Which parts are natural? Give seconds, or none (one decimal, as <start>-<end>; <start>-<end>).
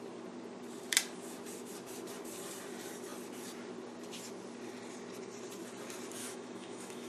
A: 0.0-6.2